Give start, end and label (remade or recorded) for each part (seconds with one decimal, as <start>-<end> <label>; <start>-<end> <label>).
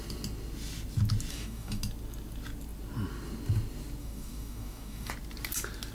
0.0-1.3 recorded; 1.3-1.8 remade; 1.8-4.0 recorded; 4.0-5.1 remade; 5.1-5.9 recorded